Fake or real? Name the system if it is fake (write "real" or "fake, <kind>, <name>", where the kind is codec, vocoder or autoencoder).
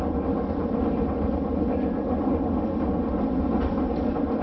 real